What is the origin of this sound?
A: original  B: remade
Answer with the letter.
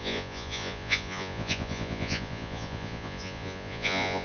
B